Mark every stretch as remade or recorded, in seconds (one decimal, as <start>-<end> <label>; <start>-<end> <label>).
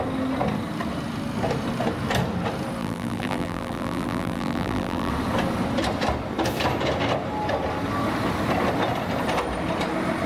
0.0-2.8 recorded; 2.8-5.1 remade; 5.1-10.3 recorded